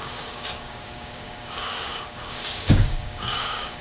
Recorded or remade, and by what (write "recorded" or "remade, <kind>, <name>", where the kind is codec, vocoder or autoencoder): remade, codec, DAC